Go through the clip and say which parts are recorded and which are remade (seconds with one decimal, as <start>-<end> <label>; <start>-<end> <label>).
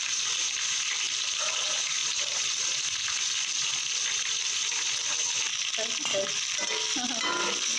0.0-7.8 recorded